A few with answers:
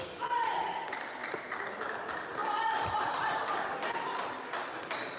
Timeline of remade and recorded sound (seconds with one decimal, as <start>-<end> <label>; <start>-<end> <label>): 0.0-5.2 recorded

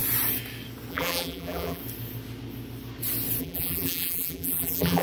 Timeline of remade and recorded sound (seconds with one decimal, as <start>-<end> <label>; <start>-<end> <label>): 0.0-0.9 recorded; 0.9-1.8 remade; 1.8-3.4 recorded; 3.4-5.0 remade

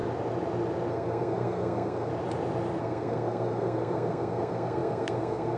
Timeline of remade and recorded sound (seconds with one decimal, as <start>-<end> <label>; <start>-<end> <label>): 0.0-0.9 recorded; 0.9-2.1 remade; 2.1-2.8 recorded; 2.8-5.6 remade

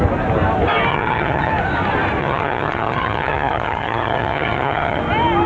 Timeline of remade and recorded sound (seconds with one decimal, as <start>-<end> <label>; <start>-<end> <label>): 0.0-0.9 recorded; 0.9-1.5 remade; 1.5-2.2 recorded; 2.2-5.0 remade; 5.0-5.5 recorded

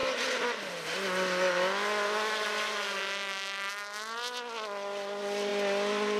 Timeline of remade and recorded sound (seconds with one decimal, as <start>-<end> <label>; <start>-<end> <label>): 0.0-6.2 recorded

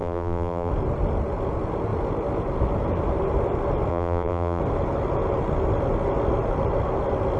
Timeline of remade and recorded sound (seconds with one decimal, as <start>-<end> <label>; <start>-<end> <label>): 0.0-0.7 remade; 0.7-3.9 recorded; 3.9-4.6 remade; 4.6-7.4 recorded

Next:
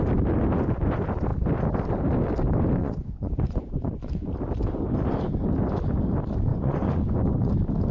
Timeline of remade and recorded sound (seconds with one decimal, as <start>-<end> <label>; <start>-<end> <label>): 0.0-2.8 recorded; 2.8-4.3 remade; 4.3-6.5 recorded; 6.5-7.5 remade; 7.5-7.9 recorded